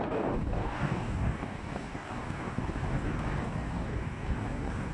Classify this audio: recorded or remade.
remade